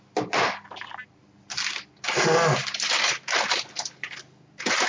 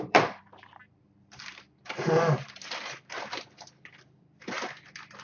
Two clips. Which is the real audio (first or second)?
first